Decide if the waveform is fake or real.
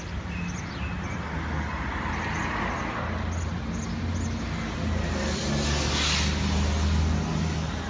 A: real